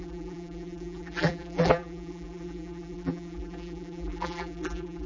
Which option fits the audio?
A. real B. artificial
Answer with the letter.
B